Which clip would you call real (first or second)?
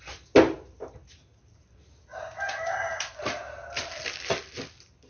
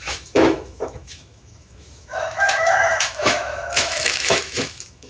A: first